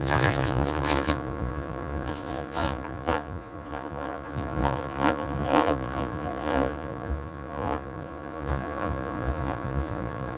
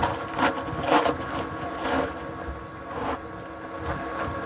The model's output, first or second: first